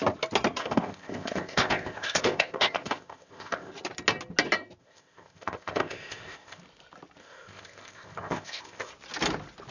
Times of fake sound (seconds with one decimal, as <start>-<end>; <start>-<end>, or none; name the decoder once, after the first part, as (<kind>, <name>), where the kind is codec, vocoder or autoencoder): 0.6-3.7 (codec, ZipCodec); 4.8-6.6; 7.2-8.9